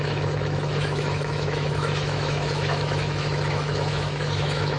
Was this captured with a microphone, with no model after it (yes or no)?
no